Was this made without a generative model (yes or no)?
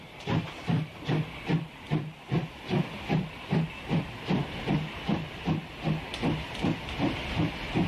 yes